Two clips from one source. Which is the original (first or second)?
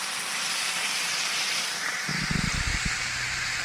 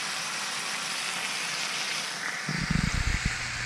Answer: second